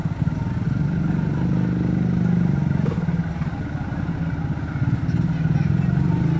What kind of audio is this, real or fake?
real